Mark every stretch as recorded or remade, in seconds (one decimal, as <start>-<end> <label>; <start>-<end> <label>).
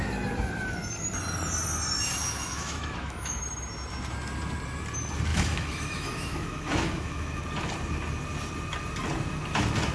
0.0-2.2 recorded; 2.2-3.4 remade; 3.4-5.3 recorded; 5.3-7.4 remade; 7.4-9.9 recorded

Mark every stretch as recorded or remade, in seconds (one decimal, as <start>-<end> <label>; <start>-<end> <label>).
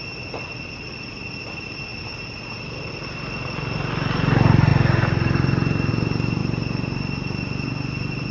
0.0-8.3 recorded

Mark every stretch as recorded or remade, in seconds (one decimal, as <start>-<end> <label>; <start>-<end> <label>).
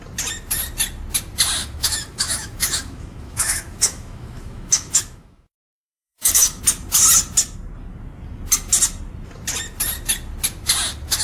0.0-1.6 recorded; 1.6-6.6 remade; 6.6-11.2 recorded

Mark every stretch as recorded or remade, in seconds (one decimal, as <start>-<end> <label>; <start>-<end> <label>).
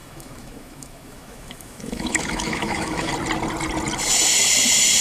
0.0-3.1 remade; 3.1-5.0 recorded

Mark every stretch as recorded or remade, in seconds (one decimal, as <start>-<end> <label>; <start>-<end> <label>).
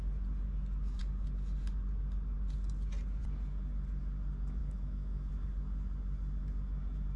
0.0-4.6 recorded; 4.6-5.3 remade; 5.3-7.2 recorded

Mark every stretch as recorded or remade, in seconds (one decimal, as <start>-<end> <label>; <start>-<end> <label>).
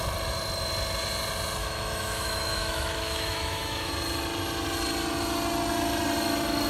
0.0-1.6 recorded; 1.6-3.9 remade; 3.9-6.7 recorded